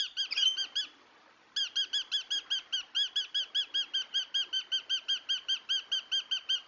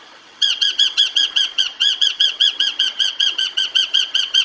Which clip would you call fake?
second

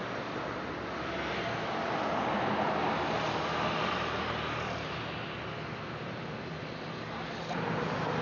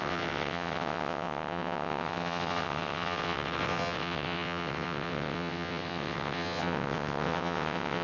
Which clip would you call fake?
second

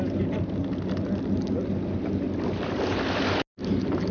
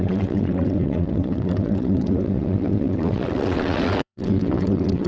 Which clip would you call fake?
second